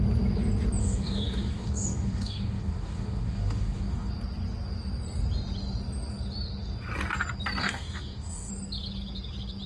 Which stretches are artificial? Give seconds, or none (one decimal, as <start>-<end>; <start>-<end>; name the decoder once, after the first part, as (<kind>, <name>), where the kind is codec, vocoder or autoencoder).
0.8-4.1 (codec, DAC); 7.6-8.5